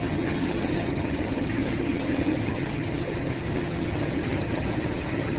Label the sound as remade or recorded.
remade